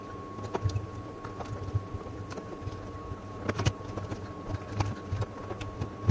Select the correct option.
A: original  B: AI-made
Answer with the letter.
B